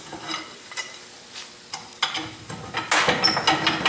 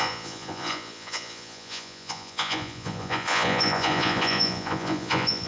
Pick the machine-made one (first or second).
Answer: second